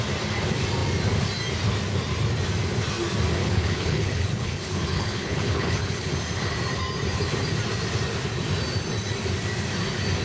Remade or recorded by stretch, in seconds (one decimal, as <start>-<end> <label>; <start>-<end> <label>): 0.0-3.4 recorded; 3.4-6.1 remade; 6.1-10.2 recorded